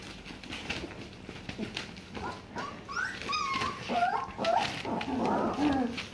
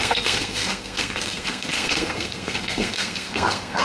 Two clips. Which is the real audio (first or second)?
first